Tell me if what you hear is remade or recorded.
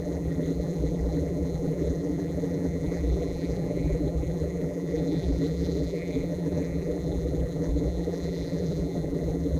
remade